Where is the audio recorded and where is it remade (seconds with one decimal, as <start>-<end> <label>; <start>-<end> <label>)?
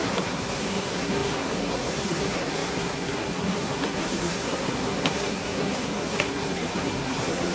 0.0-7.5 remade